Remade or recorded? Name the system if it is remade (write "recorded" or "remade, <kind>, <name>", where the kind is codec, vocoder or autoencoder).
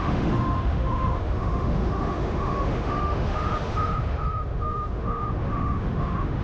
remade, autoencoder, DAC-VAE